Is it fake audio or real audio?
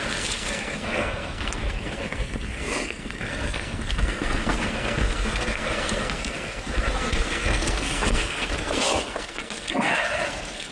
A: fake